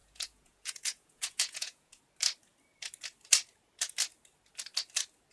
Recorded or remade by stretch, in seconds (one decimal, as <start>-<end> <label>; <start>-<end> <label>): 0.0-2.0 remade; 2.0-5.3 recorded